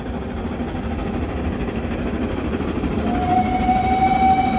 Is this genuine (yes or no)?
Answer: yes